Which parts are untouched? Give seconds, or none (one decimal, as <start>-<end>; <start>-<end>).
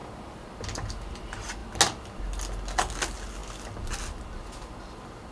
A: 0.0-5.3